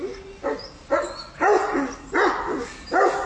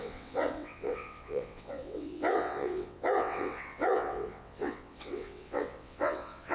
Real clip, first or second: first